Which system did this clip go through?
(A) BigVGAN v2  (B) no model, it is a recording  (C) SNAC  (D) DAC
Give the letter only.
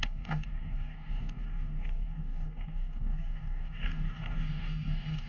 D